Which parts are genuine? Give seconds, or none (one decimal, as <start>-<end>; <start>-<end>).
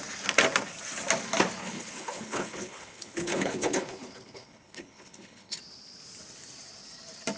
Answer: 0.0-1.6; 5.6-7.4